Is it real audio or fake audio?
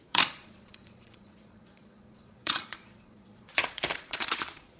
fake